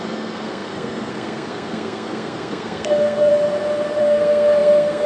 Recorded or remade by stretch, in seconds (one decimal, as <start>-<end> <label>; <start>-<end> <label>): 0.0-3.3 remade; 3.3-4.0 recorded; 4.0-5.1 remade